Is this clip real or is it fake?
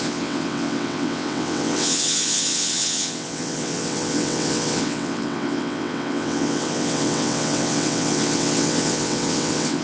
fake